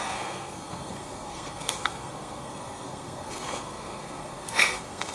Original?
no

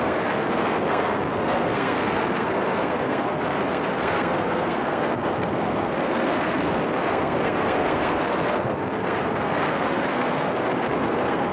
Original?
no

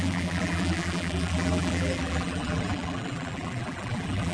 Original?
no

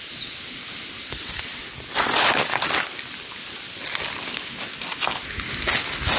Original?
yes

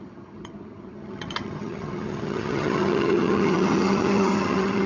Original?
no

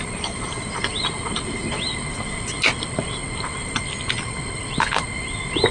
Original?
yes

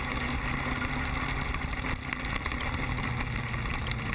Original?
yes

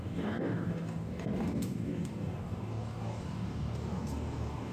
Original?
no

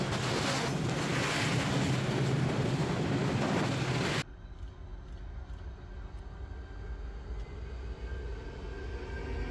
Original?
yes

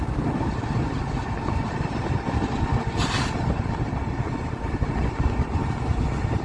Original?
yes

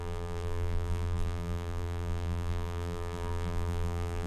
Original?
no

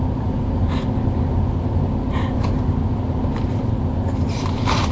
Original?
yes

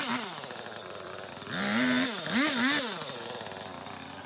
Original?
yes